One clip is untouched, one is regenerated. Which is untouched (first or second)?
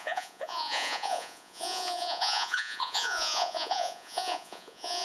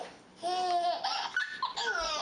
second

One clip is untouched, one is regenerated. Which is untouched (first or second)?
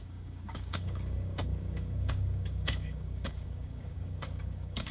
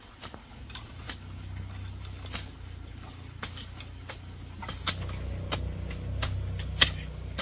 second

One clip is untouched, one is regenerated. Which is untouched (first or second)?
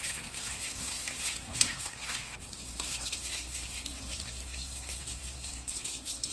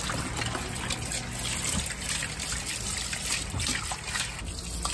second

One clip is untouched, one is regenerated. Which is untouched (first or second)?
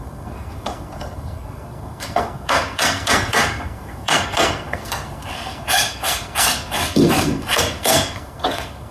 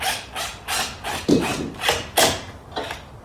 second